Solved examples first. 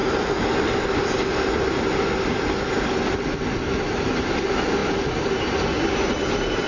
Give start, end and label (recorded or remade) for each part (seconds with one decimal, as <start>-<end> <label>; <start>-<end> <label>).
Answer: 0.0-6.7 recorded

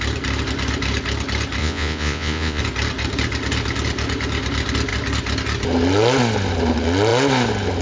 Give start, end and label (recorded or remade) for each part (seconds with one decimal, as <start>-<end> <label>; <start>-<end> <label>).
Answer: 0.0-1.6 recorded; 1.6-2.6 remade; 2.6-7.8 recorded

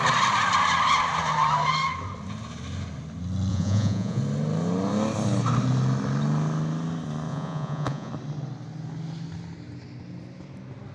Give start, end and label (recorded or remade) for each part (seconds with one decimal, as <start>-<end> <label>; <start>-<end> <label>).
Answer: 0.0-3.5 recorded; 3.5-4.2 remade; 4.2-7.3 recorded; 7.3-8.1 remade; 8.1-10.9 recorded

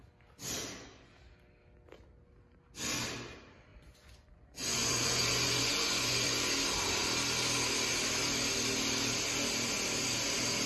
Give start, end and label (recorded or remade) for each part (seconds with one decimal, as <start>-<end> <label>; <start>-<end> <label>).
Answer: 0.0-3.7 recorded; 3.7-6.5 remade; 6.5-10.7 recorded